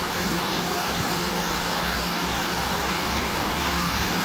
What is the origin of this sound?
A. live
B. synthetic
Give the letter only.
B